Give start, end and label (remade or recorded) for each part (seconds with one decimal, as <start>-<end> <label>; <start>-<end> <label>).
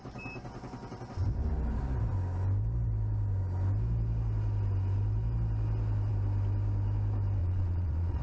0.0-7.4 recorded; 7.4-8.2 remade